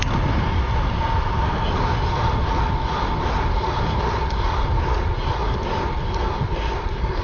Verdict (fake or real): real